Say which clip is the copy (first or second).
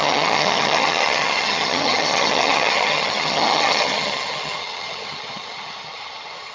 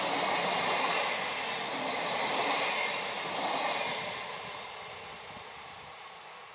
first